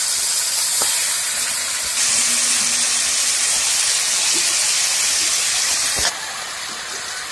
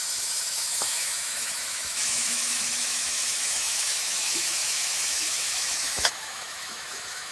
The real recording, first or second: first